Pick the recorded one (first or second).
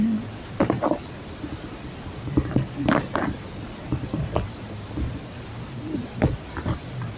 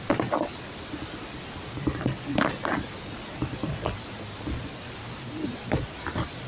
second